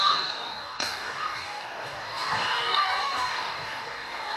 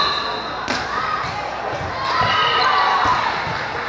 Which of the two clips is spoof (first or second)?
first